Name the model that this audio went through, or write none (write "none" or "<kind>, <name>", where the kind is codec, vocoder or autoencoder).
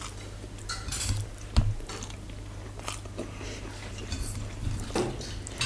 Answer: none